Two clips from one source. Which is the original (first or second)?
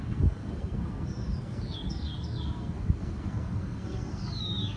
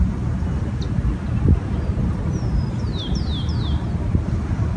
second